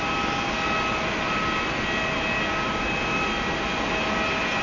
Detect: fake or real real